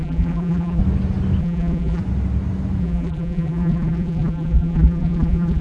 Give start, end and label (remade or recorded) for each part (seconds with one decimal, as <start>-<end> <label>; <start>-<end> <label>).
0.0-0.8 remade; 0.8-1.4 recorded; 1.4-2.0 remade; 2.0-2.8 recorded; 2.8-5.6 remade